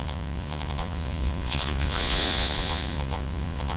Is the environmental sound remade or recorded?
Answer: remade